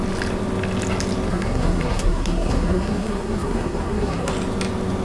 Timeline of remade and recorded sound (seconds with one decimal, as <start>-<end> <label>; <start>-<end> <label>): 0.0-1.3 recorded; 1.3-4.3 remade; 4.3-5.0 recorded